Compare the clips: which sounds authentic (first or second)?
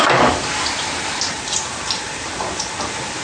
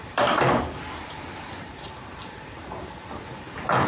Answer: first